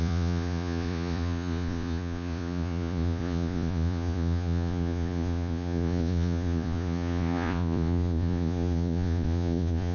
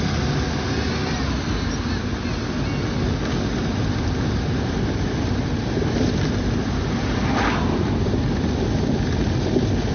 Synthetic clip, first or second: first